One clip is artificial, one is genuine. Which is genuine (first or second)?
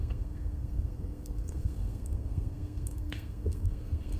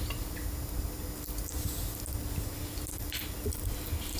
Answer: second